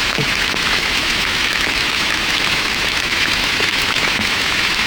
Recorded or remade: remade